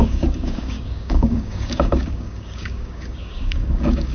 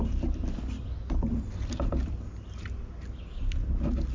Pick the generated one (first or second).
first